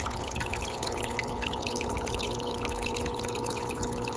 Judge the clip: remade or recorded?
remade